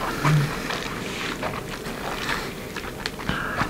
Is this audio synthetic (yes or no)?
no